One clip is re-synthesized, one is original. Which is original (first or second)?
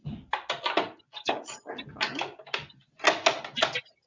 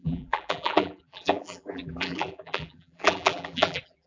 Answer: first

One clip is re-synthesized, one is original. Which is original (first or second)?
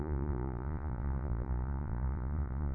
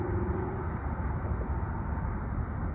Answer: second